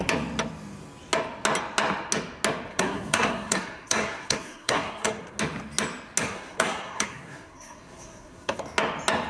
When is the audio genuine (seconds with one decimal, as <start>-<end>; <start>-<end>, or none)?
0.0-2.7; 5.4-6.2; 8.6-9.3